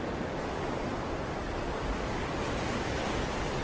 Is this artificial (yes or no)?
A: no